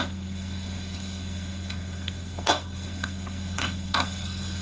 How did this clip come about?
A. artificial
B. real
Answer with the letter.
A